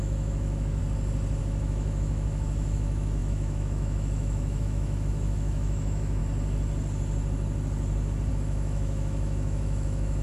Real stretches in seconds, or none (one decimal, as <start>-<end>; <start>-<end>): 0.8-1.4; 6.2-8.3